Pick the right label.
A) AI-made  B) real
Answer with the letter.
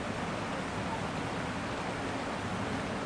B